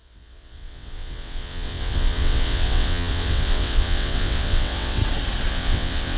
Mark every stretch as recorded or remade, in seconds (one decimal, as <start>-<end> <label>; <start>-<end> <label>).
0.0-5.0 remade; 5.0-5.5 recorded; 5.5-6.2 remade